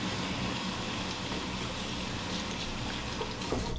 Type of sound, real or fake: real